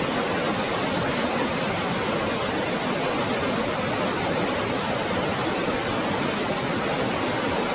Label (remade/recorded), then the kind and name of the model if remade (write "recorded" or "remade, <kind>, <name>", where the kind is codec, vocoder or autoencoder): recorded